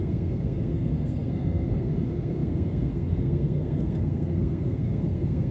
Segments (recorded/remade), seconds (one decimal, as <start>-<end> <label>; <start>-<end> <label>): 0.0-5.5 remade